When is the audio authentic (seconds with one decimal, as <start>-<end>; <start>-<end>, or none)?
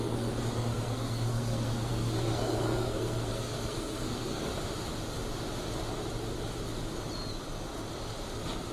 4.5-8.7